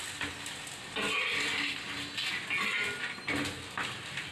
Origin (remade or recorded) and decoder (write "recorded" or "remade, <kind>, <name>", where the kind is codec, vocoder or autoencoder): recorded